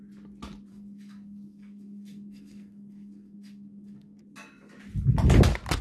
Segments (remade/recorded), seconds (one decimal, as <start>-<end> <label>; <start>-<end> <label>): 0.0-0.7 recorded; 0.7-4.2 remade; 4.2-5.8 recorded